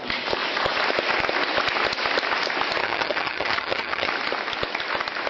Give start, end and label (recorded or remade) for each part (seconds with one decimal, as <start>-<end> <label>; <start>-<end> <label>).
0.0-2.8 recorded; 2.8-4.1 remade; 4.1-5.3 recorded